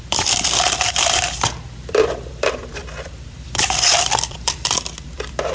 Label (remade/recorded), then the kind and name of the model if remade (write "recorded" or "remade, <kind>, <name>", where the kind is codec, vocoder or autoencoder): remade, vocoder, BigVGAN v2